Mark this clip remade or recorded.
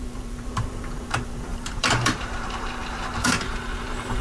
remade